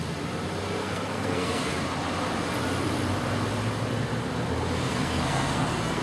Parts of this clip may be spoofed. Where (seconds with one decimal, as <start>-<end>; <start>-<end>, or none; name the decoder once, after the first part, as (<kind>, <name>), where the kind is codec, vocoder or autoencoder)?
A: 0.8-1.7 (codec, SNAC); 4.9-6.0